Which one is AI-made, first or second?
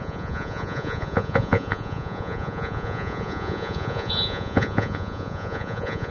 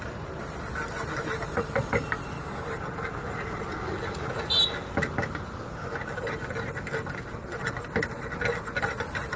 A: first